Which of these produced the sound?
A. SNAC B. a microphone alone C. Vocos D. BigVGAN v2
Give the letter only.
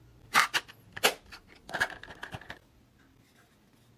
B